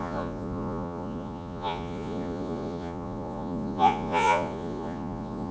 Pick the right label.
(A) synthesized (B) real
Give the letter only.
A